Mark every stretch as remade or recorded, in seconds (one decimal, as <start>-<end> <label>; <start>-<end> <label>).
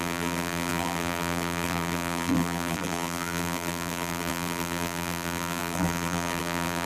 0.0-6.9 remade